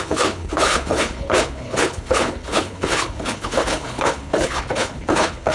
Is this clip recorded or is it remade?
remade